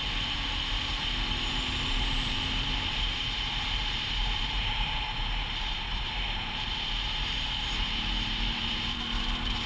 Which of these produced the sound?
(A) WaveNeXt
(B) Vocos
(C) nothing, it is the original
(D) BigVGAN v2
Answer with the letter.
D